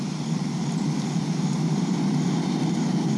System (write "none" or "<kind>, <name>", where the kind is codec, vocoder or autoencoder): none